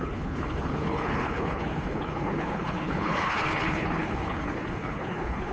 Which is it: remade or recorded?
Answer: remade